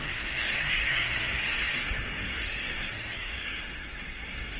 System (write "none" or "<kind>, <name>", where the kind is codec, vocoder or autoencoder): codec, SNAC